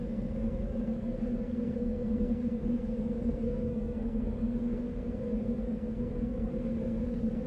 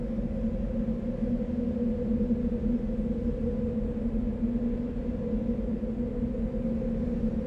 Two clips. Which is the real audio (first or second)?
second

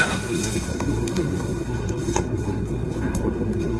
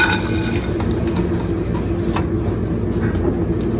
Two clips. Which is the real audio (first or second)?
second